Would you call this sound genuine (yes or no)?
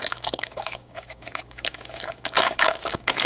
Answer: no